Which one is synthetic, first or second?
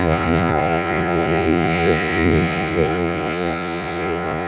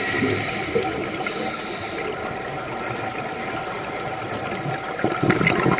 first